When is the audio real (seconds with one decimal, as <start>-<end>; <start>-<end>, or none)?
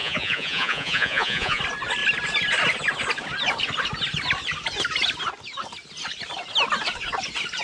1.6-7.6